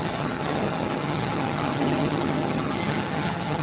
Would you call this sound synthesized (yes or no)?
yes